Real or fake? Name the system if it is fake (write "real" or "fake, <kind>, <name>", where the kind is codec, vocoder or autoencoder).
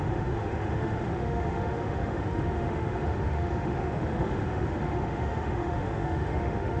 fake, autoencoder, DAC-VAE